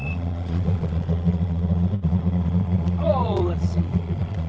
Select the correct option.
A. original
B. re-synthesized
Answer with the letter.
B